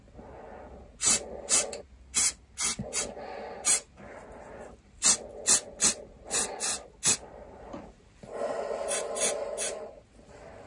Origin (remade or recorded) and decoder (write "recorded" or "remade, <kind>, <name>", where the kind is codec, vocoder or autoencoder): recorded